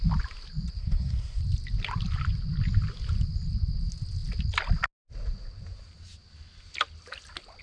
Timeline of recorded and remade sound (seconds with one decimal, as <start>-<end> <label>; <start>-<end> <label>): 0.0-0.8 recorded; 0.8-1.4 remade; 1.4-7.6 recorded